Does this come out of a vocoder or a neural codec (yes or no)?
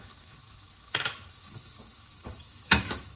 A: yes